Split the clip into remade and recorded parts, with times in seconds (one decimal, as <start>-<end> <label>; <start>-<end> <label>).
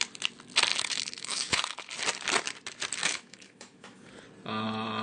0.0-0.7 recorded; 0.7-1.9 remade; 1.9-3.0 recorded; 3.0-4.1 remade; 4.1-5.0 recorded